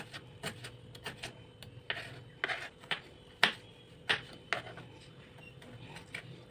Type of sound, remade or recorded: recorded